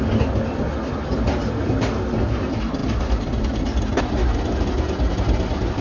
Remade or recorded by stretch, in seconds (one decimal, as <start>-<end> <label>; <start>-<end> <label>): 0.0-5.8 recorded